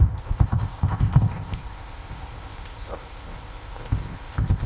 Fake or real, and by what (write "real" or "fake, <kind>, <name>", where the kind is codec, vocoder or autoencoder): fake, codec, ZipCodec